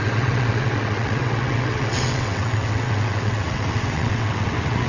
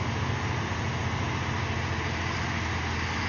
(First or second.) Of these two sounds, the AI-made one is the first